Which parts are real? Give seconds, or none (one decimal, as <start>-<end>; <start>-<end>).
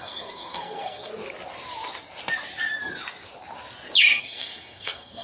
1.1-4.2